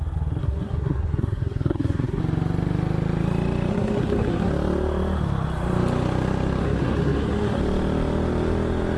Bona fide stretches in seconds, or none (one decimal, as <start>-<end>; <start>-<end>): 0.0-0.4; 2.2-3.7; 4.5-6.6; 7.6-9.0